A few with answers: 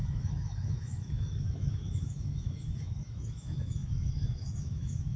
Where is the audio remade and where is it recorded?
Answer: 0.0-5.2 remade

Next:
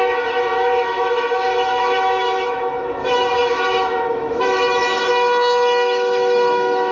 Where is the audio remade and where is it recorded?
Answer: 0.0-6.9 remade